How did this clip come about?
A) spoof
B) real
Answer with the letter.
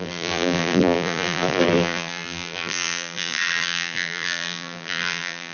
A